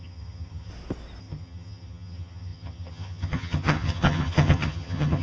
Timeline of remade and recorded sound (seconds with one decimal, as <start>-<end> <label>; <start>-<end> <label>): 0.0-0.7 remade; 0.7-1.2 recorded; 1.2-5.2 remade